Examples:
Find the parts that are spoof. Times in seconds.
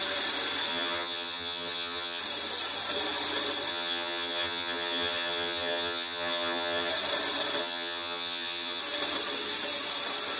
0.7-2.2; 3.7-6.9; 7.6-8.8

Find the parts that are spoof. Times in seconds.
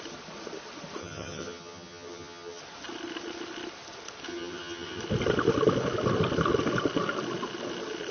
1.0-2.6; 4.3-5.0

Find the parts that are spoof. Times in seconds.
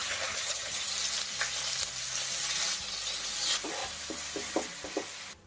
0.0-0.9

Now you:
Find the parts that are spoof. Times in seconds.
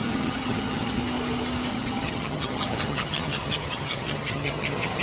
0.0-1.0; 1.7-5.0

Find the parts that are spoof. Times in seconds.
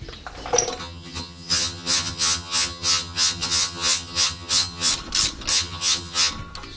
0.8-4.9; 5.5-6.3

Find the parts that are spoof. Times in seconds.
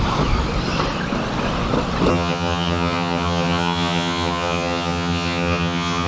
2.1-6.1